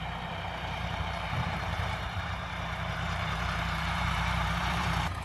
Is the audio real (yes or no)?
no